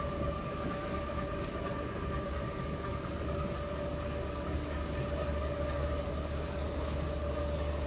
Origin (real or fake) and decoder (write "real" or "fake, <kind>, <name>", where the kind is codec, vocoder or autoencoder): fake, codec, DAC